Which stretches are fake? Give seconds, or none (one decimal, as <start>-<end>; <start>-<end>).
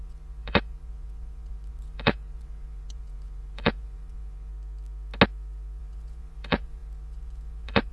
0.0-4.5; 5.8-7.9